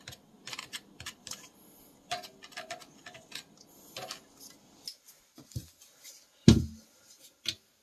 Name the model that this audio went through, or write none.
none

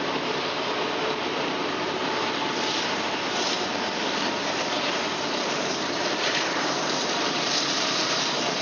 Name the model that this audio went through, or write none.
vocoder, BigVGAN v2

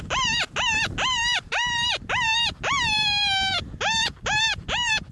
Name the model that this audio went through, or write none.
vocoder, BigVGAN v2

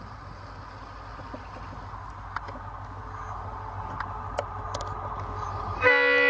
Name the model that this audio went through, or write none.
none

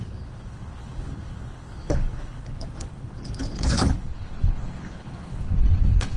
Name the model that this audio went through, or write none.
codec, HILCodec